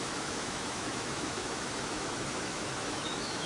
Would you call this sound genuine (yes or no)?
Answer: no